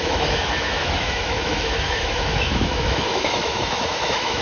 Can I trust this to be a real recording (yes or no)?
no